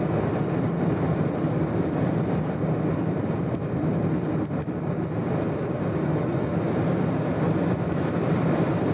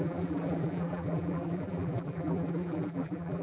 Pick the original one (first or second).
first